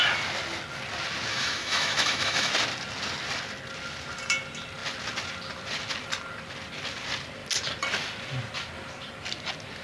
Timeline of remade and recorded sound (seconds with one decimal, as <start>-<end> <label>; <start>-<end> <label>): 0.0-1.3 recorded; 1.3-2.5 remade; 2.5-9.8 recorded